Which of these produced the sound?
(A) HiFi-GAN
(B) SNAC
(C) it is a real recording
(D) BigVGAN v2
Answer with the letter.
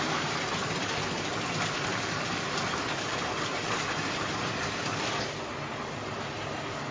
D